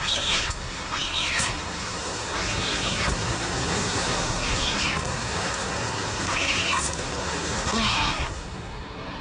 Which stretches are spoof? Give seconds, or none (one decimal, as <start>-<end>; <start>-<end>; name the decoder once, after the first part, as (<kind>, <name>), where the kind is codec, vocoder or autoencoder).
0.0-9.2 (codec, SNAC)